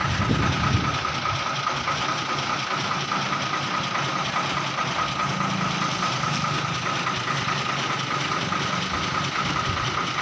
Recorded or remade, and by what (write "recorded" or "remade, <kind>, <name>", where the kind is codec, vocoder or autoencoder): recorded